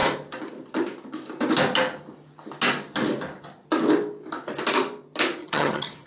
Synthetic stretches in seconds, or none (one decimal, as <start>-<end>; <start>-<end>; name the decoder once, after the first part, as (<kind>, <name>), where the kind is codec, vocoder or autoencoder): 5.4-6.1 (vocoder, HiFi-GAN)